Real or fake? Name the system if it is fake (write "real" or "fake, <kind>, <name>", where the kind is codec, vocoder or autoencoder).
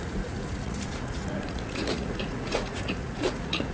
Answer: fake, vocoder, Vocos